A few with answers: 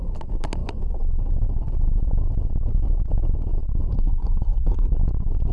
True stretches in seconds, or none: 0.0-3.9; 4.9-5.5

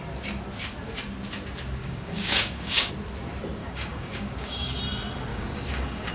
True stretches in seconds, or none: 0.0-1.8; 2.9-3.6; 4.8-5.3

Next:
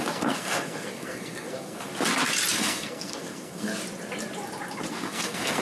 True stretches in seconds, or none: 1.9-2.5; 3.7-4.9

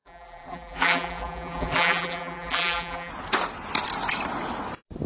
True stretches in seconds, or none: 3.1-5.1